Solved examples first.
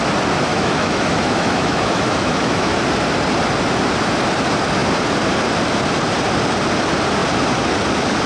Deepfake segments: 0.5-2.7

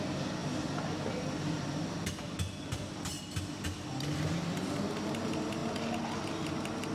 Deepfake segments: none

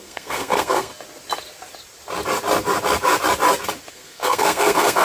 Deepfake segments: 0.0-0.9; 3.9-5.0